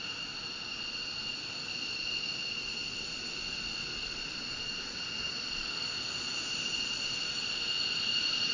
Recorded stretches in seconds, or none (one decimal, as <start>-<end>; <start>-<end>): 0.0-8.5